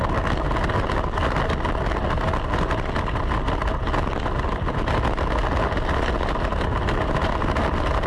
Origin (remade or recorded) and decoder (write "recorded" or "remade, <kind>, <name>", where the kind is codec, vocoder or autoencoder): recorded